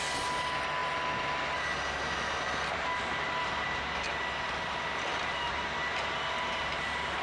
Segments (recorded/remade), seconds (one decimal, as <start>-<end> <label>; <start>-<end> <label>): 0.0-7.2 recorded